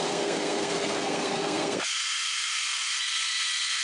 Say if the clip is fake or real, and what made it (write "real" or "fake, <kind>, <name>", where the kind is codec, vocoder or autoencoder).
fake, codec, SNAC